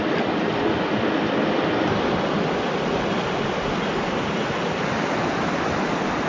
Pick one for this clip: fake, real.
real